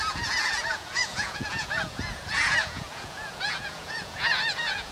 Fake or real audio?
fake